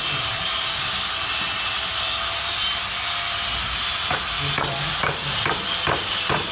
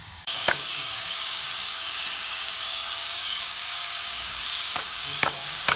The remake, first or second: second